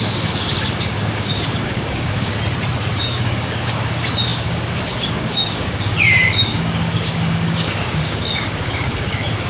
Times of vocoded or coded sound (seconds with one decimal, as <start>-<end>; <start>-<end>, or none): 0.0-2.3; 2.9-9.5